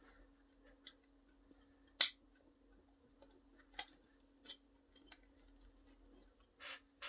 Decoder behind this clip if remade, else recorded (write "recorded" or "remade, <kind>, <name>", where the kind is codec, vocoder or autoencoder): recorded